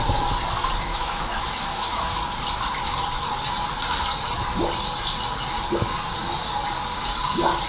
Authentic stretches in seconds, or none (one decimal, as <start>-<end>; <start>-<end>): 0.0-0.9; 2.2-7.7